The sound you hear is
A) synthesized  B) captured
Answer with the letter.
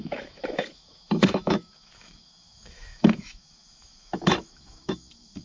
A